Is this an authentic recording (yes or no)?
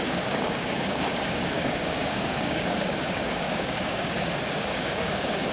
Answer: no